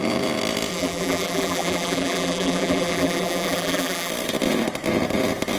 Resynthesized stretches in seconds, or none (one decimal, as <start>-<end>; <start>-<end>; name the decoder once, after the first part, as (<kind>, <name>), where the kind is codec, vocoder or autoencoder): 0.7-4.1 (vocoder, BigVGAN v2)